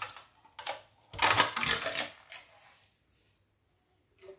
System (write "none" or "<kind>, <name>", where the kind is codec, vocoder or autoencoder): none